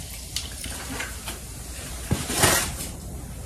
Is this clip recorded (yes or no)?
no